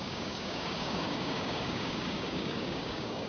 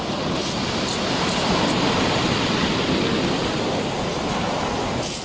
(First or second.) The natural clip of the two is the second